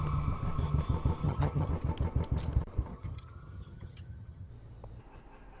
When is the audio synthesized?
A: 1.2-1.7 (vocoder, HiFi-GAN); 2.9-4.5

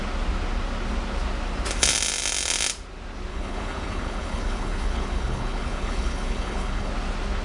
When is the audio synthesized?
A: 3.3-6.9 (codec, HILCodec)